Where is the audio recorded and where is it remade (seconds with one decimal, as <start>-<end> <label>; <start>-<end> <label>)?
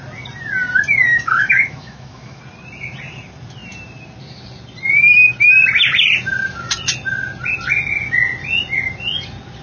0.0-1.1 recorded; 1.1-2.4 remade; 2.4-9.6 recorded